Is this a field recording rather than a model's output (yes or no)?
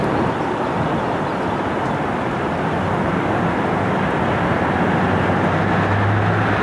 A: yes